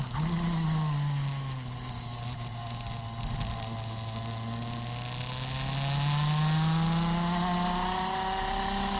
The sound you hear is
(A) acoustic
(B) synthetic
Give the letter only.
A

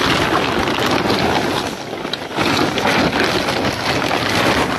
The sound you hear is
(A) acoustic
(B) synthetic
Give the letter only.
A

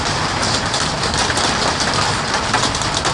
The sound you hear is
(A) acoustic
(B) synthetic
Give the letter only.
B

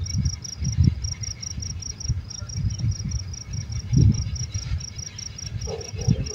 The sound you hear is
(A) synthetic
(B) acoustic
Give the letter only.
A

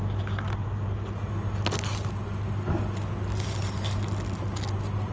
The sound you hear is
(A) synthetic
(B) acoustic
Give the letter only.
B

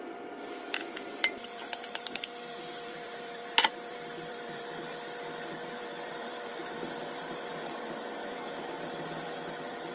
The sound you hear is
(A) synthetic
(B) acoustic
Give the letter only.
A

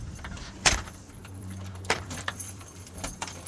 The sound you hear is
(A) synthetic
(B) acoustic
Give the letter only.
A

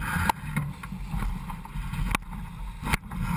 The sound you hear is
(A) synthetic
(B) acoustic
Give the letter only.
B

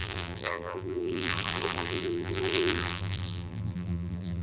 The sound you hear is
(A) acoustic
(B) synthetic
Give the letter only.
B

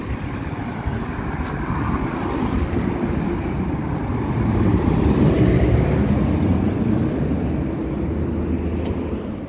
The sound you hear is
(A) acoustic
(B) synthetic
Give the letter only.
A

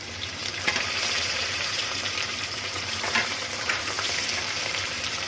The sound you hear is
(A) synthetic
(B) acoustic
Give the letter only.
A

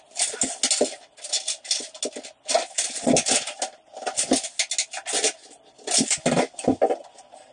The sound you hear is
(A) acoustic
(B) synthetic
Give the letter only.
A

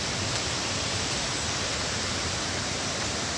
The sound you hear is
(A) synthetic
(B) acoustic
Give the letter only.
A